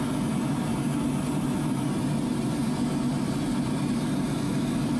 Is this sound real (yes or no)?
yes